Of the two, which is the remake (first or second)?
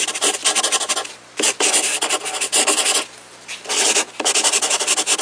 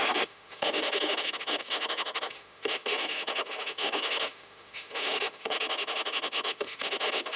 second